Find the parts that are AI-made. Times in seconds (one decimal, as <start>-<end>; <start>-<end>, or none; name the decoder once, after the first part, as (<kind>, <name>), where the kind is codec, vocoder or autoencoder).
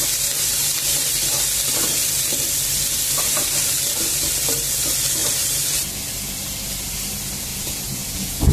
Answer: 7.5-8.5 (vocoder, Vocos)